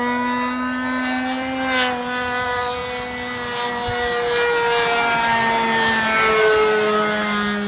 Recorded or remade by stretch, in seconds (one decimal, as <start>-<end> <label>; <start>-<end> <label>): 0.0-7.7 recorded